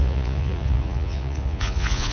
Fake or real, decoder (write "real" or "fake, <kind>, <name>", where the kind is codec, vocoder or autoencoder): fake, vocoder, Vocos